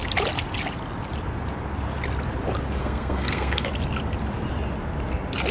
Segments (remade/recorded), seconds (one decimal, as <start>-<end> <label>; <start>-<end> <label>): 0.0-2.8 recorded; 2.8-3.7 remade; 3.7-5.5 recorded